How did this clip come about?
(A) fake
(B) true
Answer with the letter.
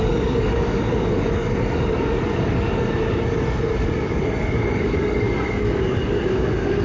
A